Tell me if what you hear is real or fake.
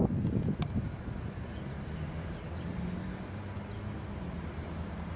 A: real